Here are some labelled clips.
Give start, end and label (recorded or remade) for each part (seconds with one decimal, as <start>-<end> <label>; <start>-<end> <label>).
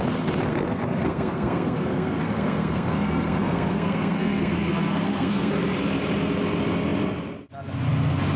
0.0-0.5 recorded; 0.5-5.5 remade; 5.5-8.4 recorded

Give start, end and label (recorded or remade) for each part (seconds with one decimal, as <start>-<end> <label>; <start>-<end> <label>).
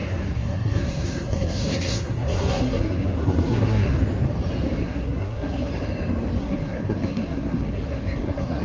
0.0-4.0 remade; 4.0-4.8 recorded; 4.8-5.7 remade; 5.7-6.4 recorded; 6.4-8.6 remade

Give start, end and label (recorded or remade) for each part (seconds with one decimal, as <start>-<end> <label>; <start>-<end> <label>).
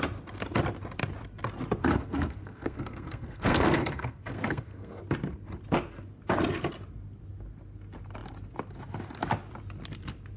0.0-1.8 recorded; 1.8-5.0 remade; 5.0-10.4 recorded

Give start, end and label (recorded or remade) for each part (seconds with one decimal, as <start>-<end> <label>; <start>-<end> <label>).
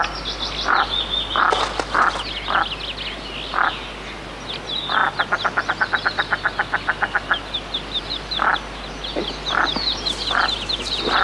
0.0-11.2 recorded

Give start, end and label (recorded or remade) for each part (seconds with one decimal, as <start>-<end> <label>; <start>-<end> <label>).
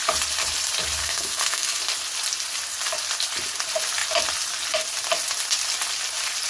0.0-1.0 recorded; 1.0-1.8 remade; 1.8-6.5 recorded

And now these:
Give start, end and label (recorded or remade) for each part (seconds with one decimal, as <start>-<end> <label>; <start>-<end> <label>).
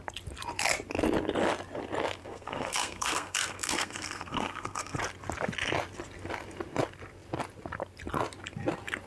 0.0-2.2 recorded; 2.2-5.0 remade; 5.0-9.1 recorded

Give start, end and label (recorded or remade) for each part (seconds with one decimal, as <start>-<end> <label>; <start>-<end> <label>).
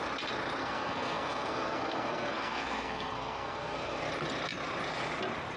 0.0-0.6 recorded; 0.6-4.0 remade; 4.0-5.6 recorded